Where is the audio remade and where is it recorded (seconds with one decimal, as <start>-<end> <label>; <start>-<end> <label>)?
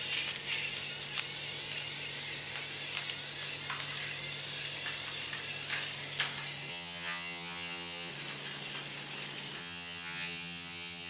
0.0-6.7 recorded; 6.7-8.1 remade; 8.1-9.6 recorded; 9.6-11.1 remade